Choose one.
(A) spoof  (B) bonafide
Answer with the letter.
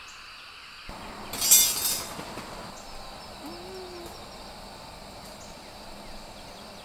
B